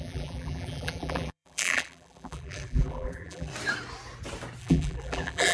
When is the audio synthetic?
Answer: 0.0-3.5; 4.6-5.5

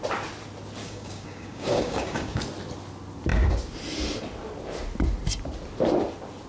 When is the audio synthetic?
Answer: 0.8-2.4

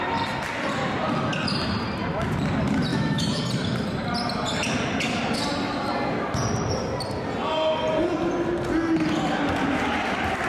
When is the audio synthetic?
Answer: 2.9-3.4